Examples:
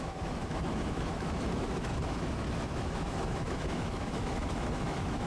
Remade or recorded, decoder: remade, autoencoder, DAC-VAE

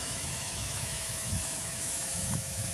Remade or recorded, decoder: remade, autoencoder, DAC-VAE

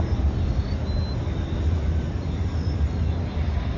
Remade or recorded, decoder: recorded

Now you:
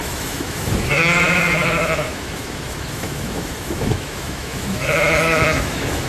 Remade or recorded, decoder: remade, autoencoder, DAC-VAE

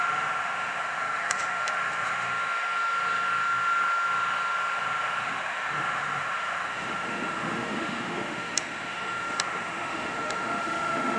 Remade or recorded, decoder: remade, autoencoder, DAC-VAE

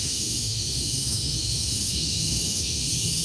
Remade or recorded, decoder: remade, autoencoder, DAC-VAE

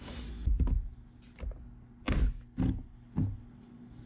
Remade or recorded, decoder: recorded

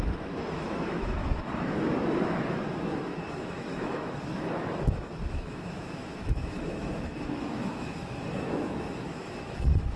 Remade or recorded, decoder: remade, autoencoder, DAC-VAE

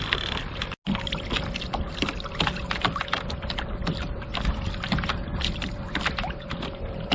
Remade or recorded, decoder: recorded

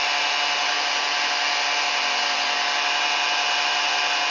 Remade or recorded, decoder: recorded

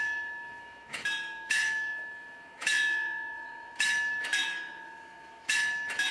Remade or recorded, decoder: remade, autoencoder, DAC-VAE